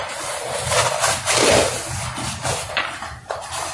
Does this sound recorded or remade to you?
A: recorded